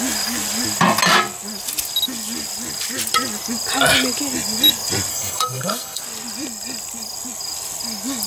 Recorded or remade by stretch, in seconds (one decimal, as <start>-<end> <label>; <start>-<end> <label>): 0.0-5.1 recorded; 5.1-6.0 remade; 6.0-8.3 recorded